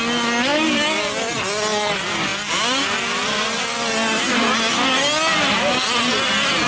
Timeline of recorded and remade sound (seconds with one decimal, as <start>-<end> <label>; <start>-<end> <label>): 0.0-6.7 recorded